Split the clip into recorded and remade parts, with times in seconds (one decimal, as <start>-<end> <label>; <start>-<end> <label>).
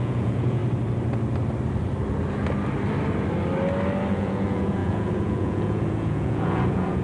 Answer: 0.0-0.6 remade; 0.6-4.1 recorded; 4.1-7.0 remade